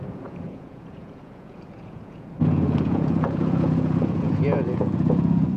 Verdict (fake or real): fake